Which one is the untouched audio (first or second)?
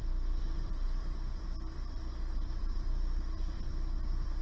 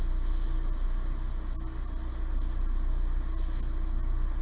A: second